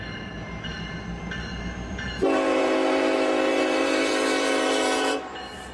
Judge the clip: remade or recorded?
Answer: remade